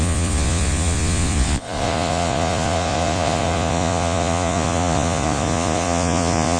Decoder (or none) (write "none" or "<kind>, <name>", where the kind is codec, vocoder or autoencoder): vocoder, Vocos